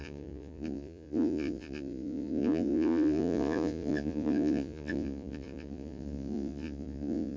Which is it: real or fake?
fake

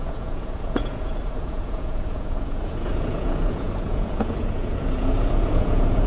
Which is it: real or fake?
fake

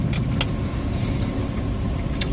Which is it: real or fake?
real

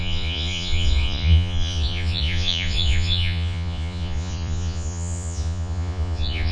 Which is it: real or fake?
fake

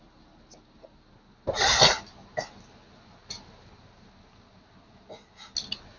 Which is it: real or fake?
real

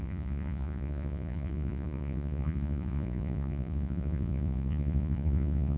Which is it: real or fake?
fake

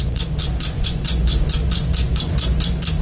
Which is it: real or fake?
fake